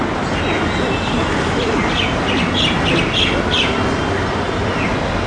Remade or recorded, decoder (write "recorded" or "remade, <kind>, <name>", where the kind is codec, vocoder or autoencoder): recorded